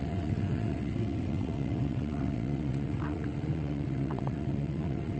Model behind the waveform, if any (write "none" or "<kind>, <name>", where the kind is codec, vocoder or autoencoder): vocoder, WaveNeXt